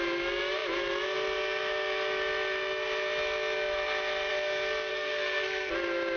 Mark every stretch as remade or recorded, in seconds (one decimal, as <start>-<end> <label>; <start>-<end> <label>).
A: 0.0-4.9 recorded; 4.9-5.7 remade; 5.7-6.2 recorded